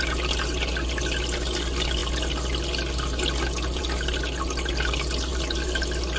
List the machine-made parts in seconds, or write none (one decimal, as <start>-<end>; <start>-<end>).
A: none